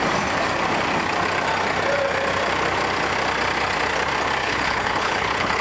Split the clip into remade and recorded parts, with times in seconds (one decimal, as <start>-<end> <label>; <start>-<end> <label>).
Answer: 0.0-4.4 recorded; 4.4-5.6 remade